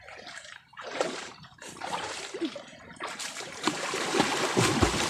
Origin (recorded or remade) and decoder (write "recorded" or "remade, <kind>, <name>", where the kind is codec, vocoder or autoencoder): remade, vocoder, BigVGAN v2